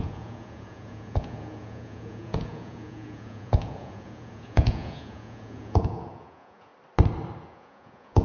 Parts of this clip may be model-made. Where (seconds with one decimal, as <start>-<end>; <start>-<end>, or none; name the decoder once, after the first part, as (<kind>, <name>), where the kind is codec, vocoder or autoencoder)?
0.0-6.7 (vocoder, Vocos); 7.4-8.2